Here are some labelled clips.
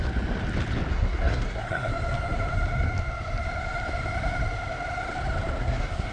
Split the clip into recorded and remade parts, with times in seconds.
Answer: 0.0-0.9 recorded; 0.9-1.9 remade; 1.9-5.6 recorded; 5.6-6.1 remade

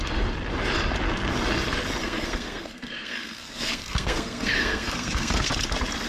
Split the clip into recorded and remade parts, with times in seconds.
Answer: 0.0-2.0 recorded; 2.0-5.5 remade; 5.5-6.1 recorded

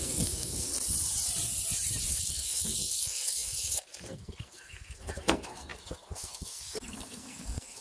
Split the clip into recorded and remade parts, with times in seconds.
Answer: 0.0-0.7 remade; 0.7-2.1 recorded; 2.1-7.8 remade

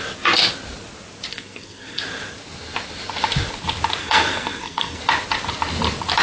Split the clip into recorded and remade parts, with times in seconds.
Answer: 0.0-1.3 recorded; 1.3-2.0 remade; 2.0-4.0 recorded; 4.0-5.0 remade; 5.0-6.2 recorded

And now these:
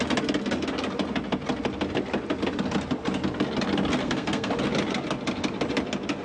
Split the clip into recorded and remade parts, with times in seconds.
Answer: 0.0-4.0 recorded; 4.0-4.5 remade; 4.5-6.2 recorded

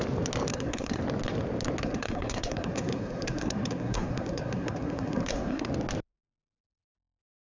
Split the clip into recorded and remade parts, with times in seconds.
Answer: 0.0-0.5 recorded; 0.5-1.0 remade; 1.0-1.8 recorded; 1.8-5.7 remade; 5.7-7.6 recorded

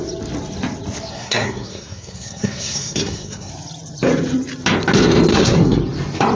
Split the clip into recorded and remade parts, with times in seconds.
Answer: 0.0-1.1 recorded; 1.1-3.5 remade; 3.5-5.3 recorded; 5.3-5.8 remade; 5.8-6.3 recorded

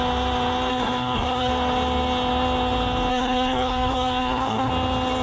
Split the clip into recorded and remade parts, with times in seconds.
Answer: 0.0-0.7 recorded; 0.7-1.5 remade; 1.5-3.1 recorded; 3.1-4.7 remade; 4.7-5.2 recorded